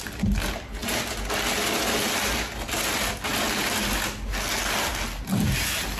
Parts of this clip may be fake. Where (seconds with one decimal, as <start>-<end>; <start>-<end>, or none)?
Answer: none